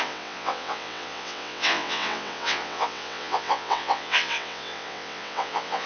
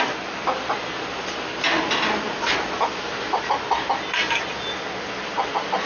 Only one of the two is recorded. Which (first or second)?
second